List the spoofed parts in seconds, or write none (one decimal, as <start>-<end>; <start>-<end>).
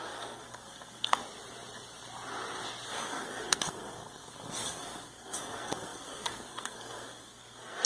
0.0-1.2; 2.9-7.9